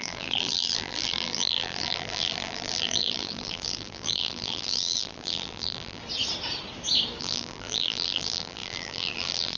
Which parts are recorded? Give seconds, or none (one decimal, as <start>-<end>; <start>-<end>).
6.0-7.2